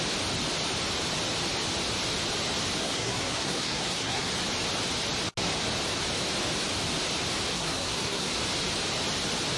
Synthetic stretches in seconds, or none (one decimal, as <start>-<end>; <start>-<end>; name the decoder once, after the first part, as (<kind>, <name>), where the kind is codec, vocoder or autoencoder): 2.8-4.3 (codec, SNAC); 7.5-8.3

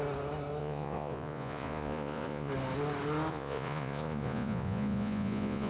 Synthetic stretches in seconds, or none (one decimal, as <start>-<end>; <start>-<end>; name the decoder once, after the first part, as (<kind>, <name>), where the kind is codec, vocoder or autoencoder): 0.6-2.5 (vocoder, Vocos); 3.3-5.7

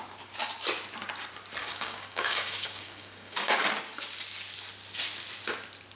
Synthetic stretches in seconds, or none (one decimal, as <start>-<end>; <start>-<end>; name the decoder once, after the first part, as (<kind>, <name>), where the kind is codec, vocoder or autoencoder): 1.6-3.6 (codec, DAC)

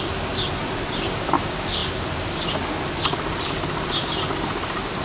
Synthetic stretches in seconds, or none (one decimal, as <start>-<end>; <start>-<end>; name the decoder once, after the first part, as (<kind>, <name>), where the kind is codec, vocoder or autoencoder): none

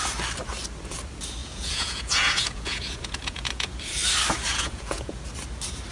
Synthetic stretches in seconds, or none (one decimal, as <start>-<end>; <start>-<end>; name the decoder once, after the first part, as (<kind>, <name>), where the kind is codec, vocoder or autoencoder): 1.4-3.7 (vocoder, Vocos); 4.5-5.2

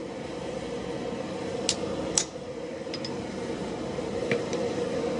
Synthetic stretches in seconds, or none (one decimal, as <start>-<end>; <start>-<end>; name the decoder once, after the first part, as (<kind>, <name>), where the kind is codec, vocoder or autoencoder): none

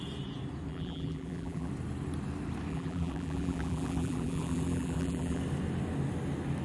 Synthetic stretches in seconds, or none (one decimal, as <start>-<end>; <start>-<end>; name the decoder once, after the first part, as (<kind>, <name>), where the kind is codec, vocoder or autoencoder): 0.7-1.7 (vocoder, BigVGAN v2); 2.7-5.4